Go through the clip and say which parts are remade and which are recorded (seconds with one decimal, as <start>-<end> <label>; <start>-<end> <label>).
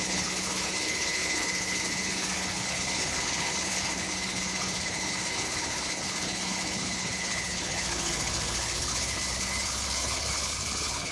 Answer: 0.0-11.1 remade